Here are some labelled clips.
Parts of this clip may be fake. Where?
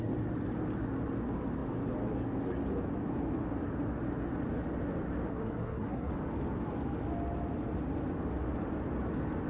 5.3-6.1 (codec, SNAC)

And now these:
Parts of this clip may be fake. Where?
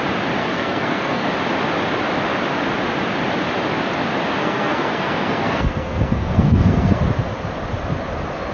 0.4-1.3 (codec, SNAC); 4.4-7.0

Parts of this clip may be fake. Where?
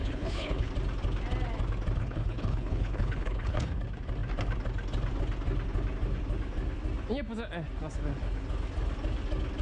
0.0-0.7 (codec, HILCodec); 2.0-3.8